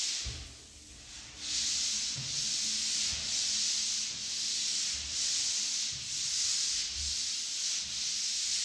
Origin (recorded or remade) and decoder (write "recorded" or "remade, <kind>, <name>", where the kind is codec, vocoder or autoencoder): recorded